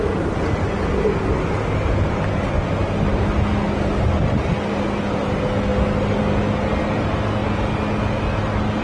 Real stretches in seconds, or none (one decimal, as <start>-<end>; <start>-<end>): 0.0-8.8